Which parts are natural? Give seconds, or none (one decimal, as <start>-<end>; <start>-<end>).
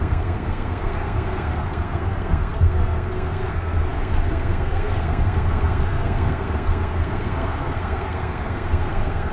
none